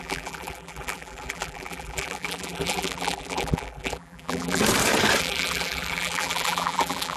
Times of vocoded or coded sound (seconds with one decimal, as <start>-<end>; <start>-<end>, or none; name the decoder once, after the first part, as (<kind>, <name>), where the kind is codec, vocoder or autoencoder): 0.0-4.6 (vocoder, BigVGAN v2); 5.2-7.2

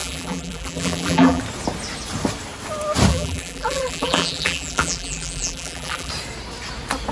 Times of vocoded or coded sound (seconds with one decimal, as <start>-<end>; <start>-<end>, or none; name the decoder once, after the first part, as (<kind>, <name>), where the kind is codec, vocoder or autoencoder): 0.0-1.4 (vocoder, BigVGAN v2); 3.1-6.1

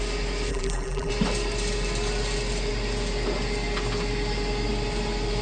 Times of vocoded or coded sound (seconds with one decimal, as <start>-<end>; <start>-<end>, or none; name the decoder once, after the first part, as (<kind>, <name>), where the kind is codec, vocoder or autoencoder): 0.5-1.1 (vocoder, BigVGAN v2)

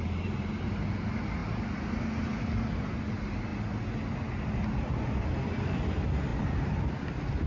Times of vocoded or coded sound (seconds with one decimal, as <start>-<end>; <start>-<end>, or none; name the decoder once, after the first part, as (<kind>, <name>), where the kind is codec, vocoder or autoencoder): none

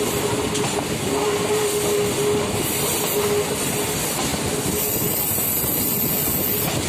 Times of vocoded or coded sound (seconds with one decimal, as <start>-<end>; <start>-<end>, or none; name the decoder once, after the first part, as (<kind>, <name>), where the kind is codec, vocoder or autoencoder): none

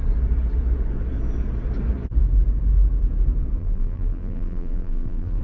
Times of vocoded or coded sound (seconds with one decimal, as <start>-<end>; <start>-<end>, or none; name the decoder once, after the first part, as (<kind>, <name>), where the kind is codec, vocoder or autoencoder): 3.6-5.4 (vocoder, BigVGAN v2)

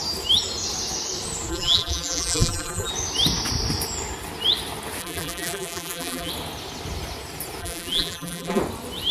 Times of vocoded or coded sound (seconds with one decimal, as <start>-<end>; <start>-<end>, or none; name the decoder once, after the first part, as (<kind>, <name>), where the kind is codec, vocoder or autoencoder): 1.5-2.9 (vocoder, BigVGAN v2); 5.0-6.3; 7.6-8.6

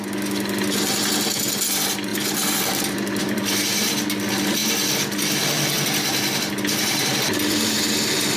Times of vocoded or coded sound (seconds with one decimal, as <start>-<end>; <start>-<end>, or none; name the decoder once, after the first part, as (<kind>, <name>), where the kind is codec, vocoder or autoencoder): 2.1-3.2 (vocoder, BigVGAN v2)